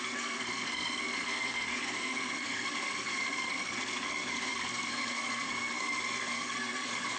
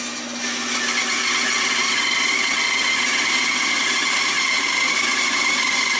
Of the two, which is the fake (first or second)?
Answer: first